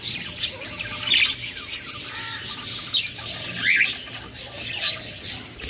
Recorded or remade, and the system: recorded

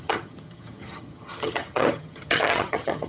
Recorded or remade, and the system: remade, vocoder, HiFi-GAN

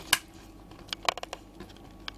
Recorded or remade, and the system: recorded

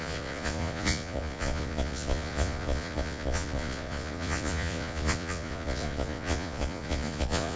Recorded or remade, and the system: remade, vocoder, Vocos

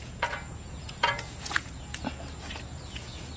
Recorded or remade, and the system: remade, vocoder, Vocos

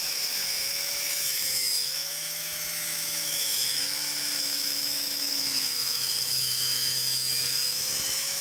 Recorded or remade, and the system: remade, autoencoder, DAC-VAE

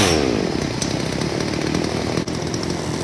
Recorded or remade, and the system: recorded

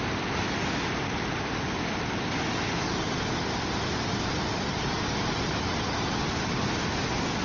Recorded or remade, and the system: recorded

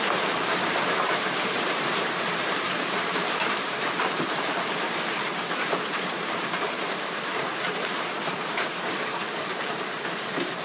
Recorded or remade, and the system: remade, vocoder, BigVGAN v2